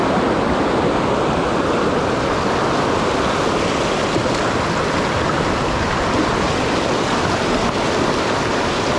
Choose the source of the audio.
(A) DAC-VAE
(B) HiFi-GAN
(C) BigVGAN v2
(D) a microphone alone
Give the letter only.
D